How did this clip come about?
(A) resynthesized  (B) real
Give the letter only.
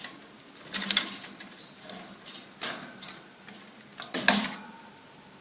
B